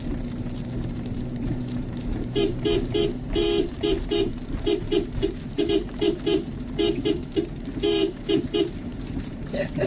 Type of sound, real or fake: fake